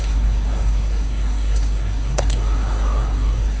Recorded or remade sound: remade